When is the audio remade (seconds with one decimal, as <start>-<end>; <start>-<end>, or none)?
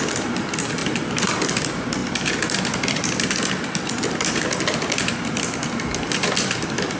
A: none